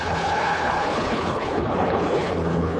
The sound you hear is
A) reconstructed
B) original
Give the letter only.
A